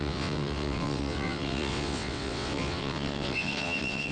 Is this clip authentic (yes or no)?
no